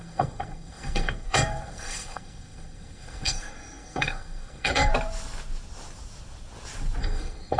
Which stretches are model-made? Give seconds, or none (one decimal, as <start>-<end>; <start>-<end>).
0.0-4.9; 7.0-7.6